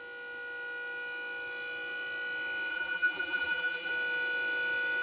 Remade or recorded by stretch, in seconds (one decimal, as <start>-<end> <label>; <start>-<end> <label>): 0.0-2.7 recorded; 2.7-3.9 remade; 3.9-5.0 recorded